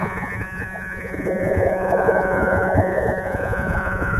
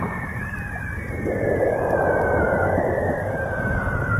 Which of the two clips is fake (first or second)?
first